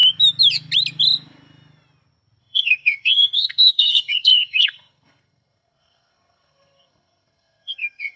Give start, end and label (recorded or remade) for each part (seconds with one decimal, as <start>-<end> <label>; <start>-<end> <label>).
0.0-2.4 recorded; 2.4-8.2 remade